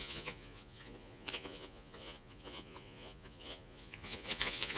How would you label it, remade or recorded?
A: remade